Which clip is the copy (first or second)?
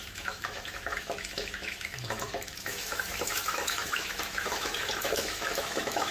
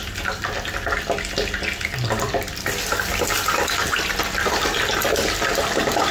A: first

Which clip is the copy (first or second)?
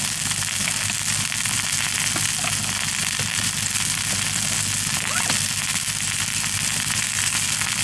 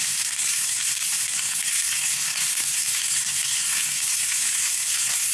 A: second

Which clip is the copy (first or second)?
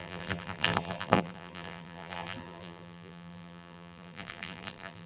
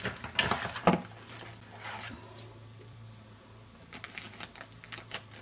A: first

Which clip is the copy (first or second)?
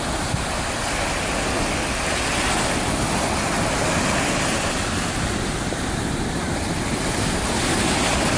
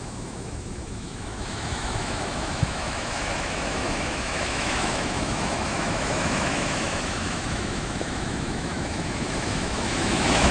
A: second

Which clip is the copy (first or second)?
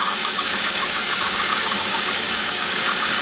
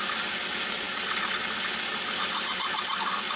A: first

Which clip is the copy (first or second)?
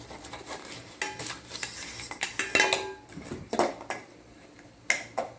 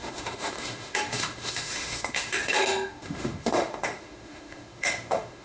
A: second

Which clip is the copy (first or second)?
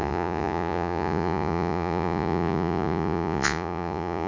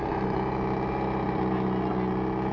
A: first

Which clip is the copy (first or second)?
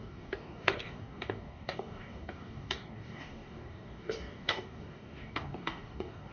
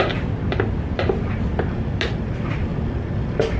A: first